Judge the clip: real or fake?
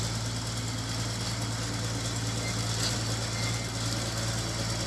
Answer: real